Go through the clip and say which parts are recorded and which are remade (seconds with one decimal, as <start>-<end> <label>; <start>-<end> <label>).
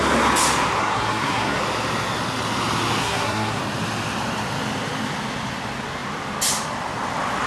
0.0-0.8 recorded; 0.8-1.6 remade; 1.6-3.0 recorded; 3.0-3.6 remade; 3.6-7.5 recorded